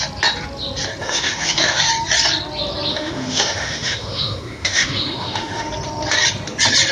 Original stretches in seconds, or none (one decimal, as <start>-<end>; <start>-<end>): 0.0-1.0; 1.9-2.9; 5.7-6.9